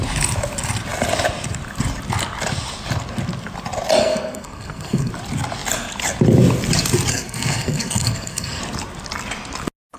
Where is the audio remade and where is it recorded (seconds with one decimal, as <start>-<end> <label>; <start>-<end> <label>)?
0.0-4.0 recorded; 4.0-5.1 remade; 5.1-7.1 recorded; 7.1-8.6 remade; 8.6-10.0 recorded